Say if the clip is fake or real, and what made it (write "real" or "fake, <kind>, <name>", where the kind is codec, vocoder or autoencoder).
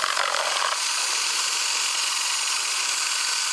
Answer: real